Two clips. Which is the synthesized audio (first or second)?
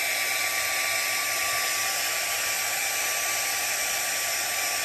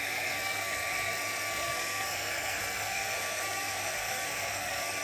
second